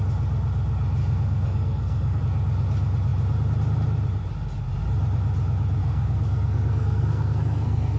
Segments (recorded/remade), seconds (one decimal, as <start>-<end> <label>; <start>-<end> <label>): 0.0-1.0 recorded; 1.0-2.2 remade; 2.2-5.8 recorded; 5.8-8.0 remade